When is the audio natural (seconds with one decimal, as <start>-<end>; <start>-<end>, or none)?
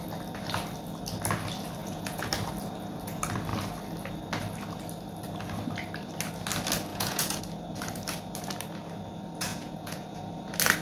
0.0-1.8; 2.3-6.9; 7.4-9.5; 10.2-10.8